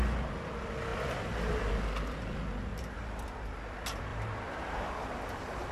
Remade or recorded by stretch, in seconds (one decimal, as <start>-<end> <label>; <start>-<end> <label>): 0.0-2.7 recorded; 2.7-3.5 remade; 3.5-4.1 recorded; 4.1-4.9 remade; 4.9-5.7 recorded